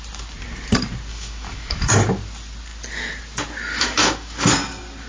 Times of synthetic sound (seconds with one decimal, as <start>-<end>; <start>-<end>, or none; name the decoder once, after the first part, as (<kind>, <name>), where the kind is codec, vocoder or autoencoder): 1.1-1.9 (autoencoder, DAC-VAE); 3.7-4.5